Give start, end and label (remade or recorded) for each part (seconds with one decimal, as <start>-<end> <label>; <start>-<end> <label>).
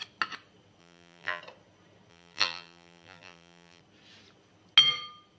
0.0-0.8 recorded; 0.8-1.4 remade; 1.4-2.1 recorded; 2.1-3.8 remade; 3.8-5.4 recorded